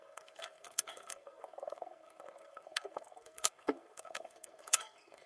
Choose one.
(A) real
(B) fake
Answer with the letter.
B